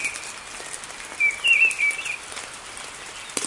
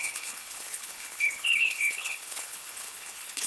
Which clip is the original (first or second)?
first